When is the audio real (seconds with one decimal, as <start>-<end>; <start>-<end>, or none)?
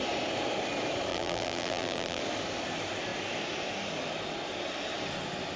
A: 0.0-1.1; 2.2-5.6